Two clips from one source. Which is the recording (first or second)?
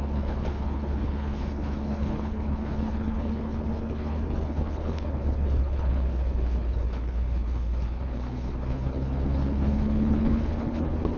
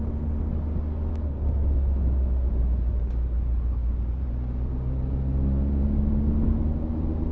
second